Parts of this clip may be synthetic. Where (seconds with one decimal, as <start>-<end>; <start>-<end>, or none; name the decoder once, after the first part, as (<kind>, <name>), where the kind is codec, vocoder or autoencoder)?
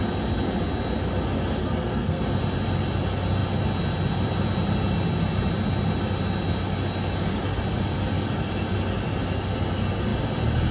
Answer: 1.6-2.2 (codec, SNAC)